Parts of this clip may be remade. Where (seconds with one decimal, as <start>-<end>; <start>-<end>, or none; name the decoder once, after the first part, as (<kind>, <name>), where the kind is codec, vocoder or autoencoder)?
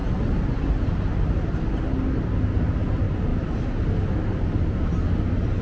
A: none